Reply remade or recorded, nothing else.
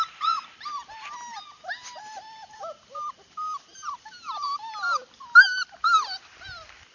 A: recorded